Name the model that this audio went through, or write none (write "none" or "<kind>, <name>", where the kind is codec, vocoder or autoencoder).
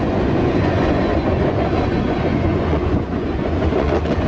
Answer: vocoder, Vocos